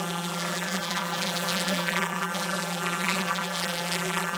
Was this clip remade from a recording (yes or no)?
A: yes